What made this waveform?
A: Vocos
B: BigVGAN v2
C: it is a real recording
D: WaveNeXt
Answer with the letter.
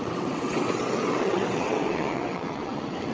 D